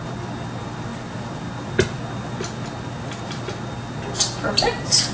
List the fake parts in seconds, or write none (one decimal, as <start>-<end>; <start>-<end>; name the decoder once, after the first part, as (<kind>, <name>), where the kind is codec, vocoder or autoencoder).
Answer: none